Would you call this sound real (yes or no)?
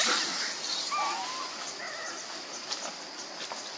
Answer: yes